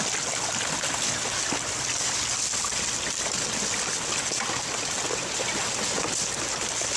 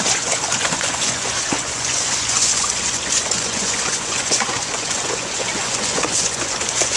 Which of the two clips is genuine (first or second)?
first